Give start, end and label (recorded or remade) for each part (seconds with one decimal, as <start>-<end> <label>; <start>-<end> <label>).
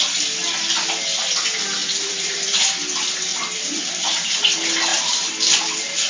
0.0-1.8 recorded; 1.8-2.7 remade; 2.7-3.3 recorded; 3.3-4.3 remade; 4.3-4.9 recorded; 4.9-6.1 remade